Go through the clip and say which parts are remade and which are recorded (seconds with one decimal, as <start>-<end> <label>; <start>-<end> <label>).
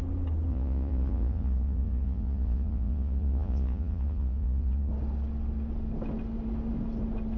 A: 0.0-0.5 recorded; 0.5-4.9 remade; 4.9-7.4 recorded